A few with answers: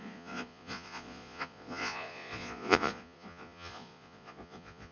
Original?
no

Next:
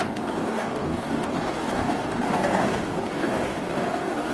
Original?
no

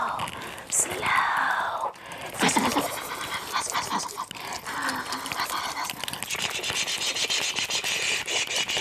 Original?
yes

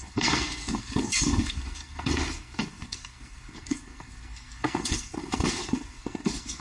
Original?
no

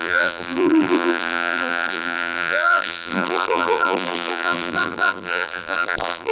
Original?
no